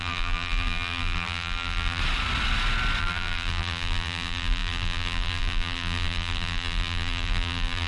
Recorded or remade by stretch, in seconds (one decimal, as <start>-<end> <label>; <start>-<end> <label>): 0.0-2.0 remade; 2.0-3.0 recorded; 3.0-7.9 remade